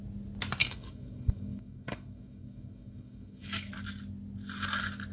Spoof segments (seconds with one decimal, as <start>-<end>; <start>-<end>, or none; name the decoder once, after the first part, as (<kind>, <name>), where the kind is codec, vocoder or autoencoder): 0.6-3.7 (codec, DAC)